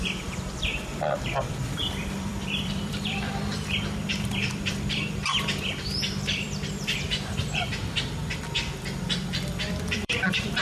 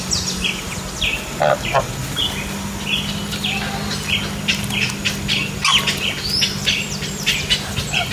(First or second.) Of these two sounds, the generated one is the first